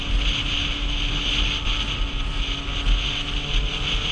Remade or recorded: recorded